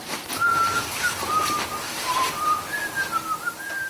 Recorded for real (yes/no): yes